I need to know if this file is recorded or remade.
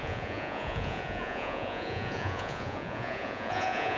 remade